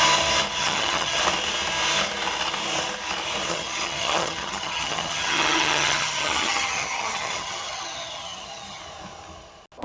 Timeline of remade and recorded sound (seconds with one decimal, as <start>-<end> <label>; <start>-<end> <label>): 0.0-0.6 recorded; 0.6-1.2 remade; 1.2-3.5 recorded; 3.5-8.8 remade; 8.8-9.8 recorded